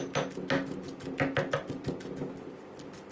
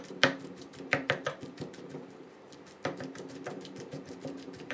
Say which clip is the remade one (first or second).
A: second